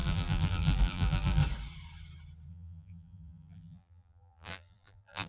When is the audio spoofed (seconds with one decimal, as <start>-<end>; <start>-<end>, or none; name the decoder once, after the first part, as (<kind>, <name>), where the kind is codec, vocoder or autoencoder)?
0.0-1.4 (vocoder, BigVGAN v2); 2.5-5.3